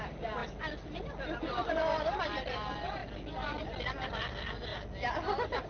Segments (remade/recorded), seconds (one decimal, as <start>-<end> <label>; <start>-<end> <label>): 0.0-5.7 recorded